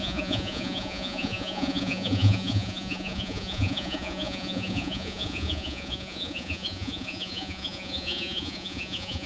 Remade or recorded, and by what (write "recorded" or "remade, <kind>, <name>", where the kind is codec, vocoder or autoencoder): remade, vocoder, Vocos